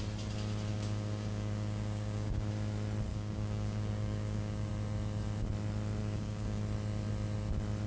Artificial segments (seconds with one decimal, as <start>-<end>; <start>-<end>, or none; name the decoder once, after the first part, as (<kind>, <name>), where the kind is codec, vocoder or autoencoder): 0.7-2.5 (codec, DAC); 3.1-4.7; 6.0-6.6